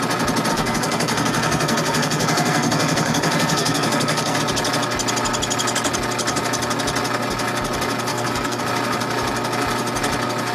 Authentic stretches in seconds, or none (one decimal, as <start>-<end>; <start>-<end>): 0.0-0.5; 4.4-8.1; 8.6-10.5